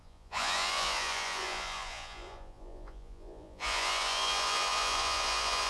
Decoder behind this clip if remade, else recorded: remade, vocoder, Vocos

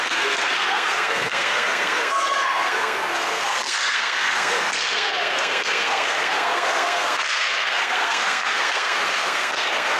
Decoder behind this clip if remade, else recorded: remade, codec, SNAC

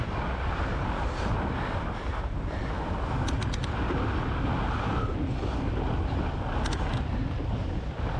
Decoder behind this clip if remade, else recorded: recorded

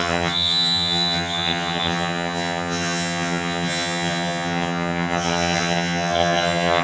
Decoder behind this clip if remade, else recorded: remade, vocoder, HiFi-GAN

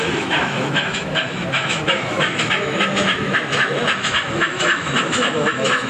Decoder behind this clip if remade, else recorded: remade, autoencoder, DAC-VAE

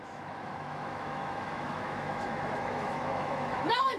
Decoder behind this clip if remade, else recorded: remade, autoencoder, DAC-VAE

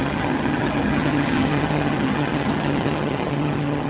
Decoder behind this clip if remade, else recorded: remade, vocoder, HiFi-GAN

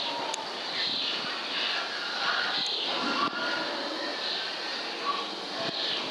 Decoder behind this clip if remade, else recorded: recorded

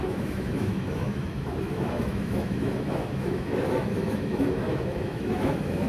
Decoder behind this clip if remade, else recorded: remade, autoencoder, DAC-VAE